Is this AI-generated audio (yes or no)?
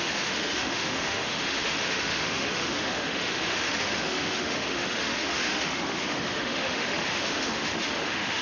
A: yes